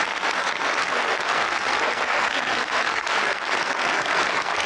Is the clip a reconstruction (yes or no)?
yes